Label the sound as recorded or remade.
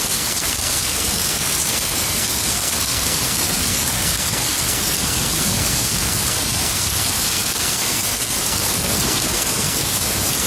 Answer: remade